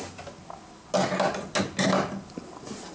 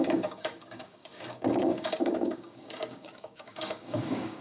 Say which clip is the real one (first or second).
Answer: first